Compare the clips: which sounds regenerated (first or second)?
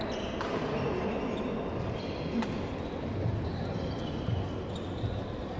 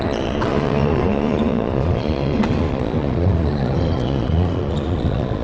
second